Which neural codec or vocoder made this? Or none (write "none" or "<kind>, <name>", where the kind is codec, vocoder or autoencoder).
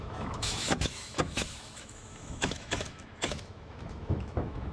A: autoencoder, DAC-VAE